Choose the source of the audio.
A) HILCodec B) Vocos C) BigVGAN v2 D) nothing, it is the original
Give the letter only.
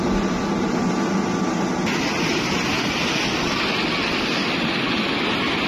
D